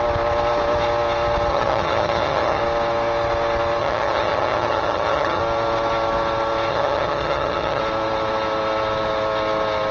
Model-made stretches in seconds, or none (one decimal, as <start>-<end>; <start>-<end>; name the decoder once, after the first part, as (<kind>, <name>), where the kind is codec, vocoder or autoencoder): 1.5-2.6 (vocoder, HiFi-GAN); 3.8-5.4; 6.7-7.8